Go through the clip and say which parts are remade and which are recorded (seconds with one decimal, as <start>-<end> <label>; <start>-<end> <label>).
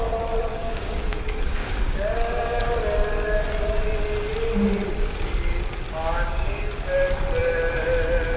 0.0-0.5 recorded; 0.5-2.6 remade; 2.6-6.1 recorded; 6.1-6.6 remade; 6.6-8.4 recorded